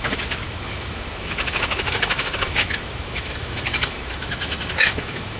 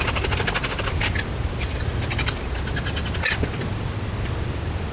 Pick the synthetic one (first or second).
first